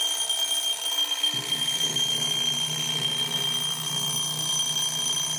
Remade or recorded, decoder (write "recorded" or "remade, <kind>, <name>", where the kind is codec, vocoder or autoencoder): recorded